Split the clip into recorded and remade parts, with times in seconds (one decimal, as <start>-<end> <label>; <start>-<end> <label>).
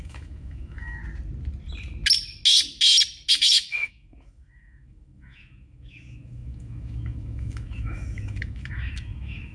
0.0-1.0 remade; 1.0-3.3 recorded; 3.3-9.5 remade